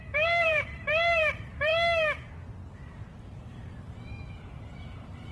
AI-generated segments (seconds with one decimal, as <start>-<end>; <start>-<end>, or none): 0.0-1.7; 3.2-4.1; 4.6-5.3